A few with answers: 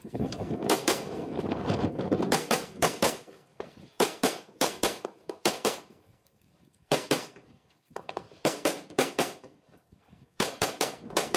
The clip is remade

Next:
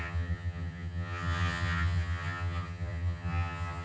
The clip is remade